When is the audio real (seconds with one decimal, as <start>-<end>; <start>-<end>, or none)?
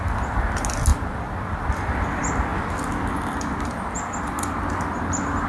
0.0-5.5